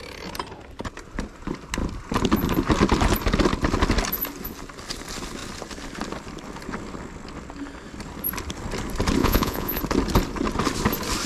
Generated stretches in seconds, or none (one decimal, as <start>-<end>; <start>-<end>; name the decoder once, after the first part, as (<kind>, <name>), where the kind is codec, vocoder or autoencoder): 9.2-9.8 (vocoder, Vocos)